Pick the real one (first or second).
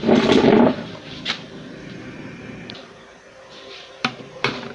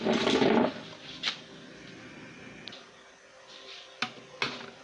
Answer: second